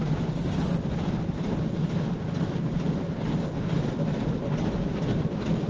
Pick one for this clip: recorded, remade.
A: recorded